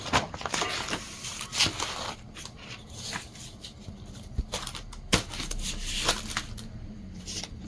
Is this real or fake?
real